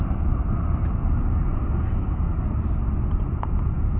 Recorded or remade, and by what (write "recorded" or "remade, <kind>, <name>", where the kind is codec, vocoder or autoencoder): recorded